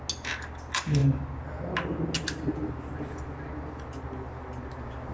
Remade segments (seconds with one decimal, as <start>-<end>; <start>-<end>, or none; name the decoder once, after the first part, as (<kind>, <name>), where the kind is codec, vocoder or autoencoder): none